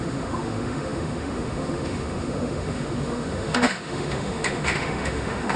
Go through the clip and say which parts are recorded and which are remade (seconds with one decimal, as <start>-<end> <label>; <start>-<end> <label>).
0.0-5.6 remade